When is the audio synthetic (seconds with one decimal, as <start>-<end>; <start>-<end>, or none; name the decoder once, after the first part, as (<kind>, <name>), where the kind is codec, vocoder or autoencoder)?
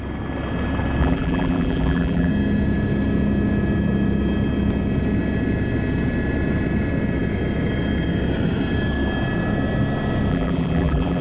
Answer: 1.0-2.3 (vocoder, BigVGAN v2); 10.3-11.2